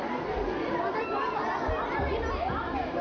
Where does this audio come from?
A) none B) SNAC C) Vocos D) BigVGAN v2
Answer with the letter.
A